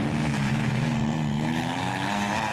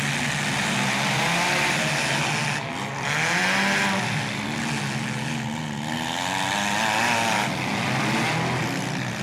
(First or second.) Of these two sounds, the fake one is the first